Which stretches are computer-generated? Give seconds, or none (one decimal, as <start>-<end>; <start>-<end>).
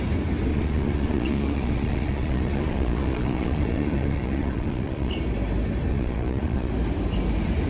0.5-5.1; 5.9-6.7